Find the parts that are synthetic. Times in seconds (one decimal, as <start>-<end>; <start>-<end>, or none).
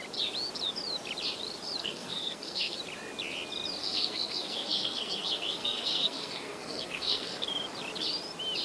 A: 1.8-2.8; 3.8-7.5